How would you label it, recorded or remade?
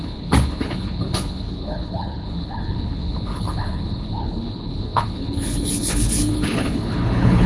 remade